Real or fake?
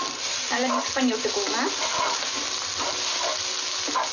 real